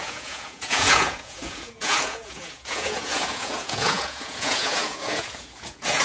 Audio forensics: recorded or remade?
remade